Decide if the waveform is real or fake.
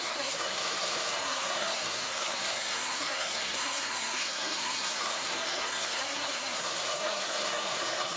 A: fake